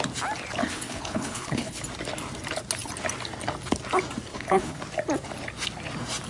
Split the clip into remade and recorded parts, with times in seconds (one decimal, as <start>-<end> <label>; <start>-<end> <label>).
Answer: 0.0-0.6 recorded; 0.6-1.8 remade; 1.8-4.3 recorded; 4.3-4.8 remade; 4.8-6.3 recorded